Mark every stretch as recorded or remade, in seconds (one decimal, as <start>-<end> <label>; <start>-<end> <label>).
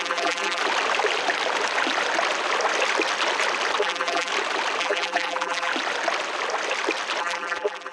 0.0-0.6 remade; 0.6-3.8 recorded; 3.8-4.3 remade; 4.3-4.8 recorded; 4.8-5.7 remade; 5.7-7.2 recorded; 7.2-7.9 remade